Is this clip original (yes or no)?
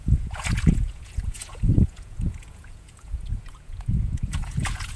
no